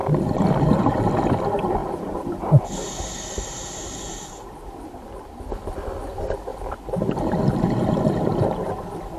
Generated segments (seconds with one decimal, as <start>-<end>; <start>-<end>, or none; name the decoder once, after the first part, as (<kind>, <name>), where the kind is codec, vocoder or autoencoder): 1.8-2.7 (vocoder, BigVGAN v2); 6.5-7.2